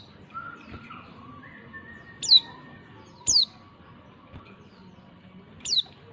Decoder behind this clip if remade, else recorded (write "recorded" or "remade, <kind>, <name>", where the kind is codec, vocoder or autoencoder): recorded